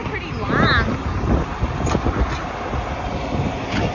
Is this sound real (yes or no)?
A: yes